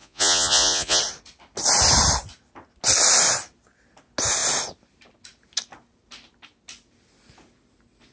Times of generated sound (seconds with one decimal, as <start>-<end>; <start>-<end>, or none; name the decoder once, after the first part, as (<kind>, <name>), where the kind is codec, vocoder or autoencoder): 0.0-1.0 (vocoder, Vocos)